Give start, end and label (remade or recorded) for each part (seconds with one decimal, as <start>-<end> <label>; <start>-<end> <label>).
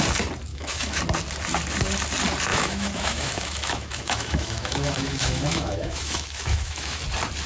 0.0-0.5 recorded; 0.5-1.0 remade; 1.0-2.5 recorded; 2.5-7.0 remade; 7.0-7.5 recorded